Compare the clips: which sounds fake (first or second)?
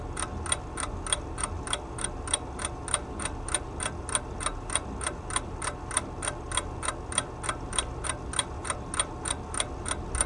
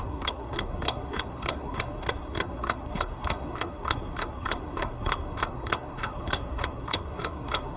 second